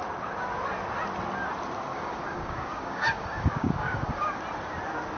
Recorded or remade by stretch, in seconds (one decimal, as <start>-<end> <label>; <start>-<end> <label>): 0.0-1.9 recorded; 1.9-4.4 remade; 4.4-5.2 recorded